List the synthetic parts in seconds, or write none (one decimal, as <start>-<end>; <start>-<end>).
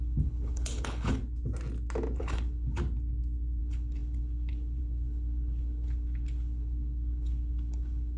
0.0-1.2; 2.2-2.8; 3.6-8.2